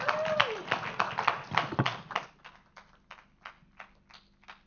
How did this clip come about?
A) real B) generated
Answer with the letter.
A